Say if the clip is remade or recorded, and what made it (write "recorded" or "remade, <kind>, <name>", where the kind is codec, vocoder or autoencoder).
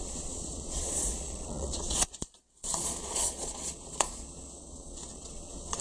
remade, vocoder, Vocos